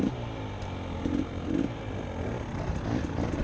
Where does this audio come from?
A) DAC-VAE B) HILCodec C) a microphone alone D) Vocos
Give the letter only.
C